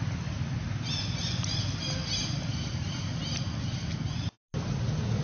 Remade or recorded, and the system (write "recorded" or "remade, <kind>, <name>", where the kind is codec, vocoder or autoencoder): recorded